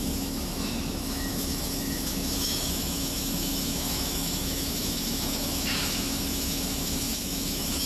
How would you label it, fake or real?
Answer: fake